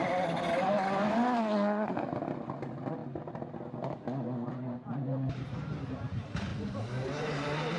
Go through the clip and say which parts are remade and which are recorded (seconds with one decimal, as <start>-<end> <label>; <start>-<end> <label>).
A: 0.0-7.8 recorded